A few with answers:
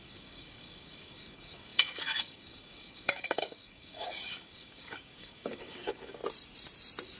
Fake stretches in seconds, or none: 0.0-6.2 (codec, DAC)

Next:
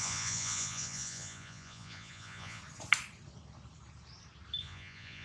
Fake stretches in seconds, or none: 0.0-2.6 (vocoder, Vocos); 4.6-5.2

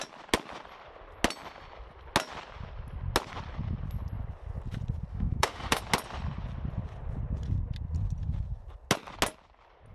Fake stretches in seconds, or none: 5.1-5.8 (autoencoder, DAC-VAE)

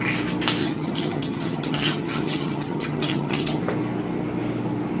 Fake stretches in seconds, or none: 0.6-3.6 (vocoder, HiFi-GAN)

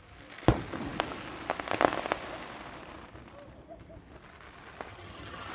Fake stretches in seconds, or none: 4.9-5.5 (vocoder, HiFi-GAN)